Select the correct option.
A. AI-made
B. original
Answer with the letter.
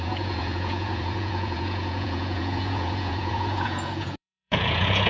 A